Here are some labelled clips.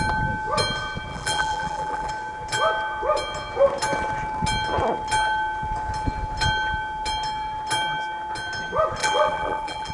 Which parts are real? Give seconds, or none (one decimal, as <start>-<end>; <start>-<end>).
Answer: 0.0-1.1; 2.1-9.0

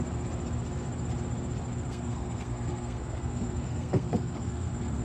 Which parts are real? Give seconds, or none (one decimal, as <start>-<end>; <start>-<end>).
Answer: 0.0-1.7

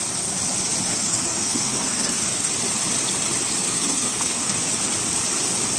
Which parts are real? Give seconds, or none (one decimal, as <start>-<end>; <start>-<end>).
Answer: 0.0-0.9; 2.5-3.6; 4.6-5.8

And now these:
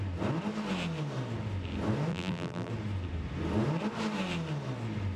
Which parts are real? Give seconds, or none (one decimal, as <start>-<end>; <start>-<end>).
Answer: 0.0-2.1; 2.7-5.2

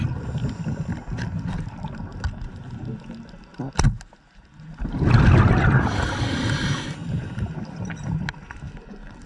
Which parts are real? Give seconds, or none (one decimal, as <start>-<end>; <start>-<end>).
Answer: 0.0-7.0; 7.5-9.3